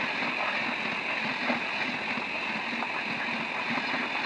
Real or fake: real